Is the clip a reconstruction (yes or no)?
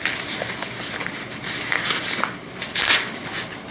no